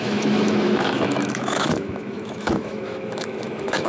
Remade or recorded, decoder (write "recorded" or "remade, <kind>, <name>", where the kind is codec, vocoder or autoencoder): remade, autoencoder, DAC-VAE